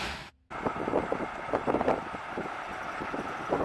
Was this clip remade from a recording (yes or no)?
no